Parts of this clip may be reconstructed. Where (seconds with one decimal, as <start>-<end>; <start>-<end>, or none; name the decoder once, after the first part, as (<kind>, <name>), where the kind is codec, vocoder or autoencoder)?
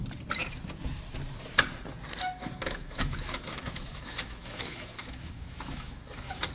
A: 2.4-6.5 (autoencoder, DAC-VAE)